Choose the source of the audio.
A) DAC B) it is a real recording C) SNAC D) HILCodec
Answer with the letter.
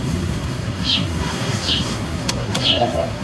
C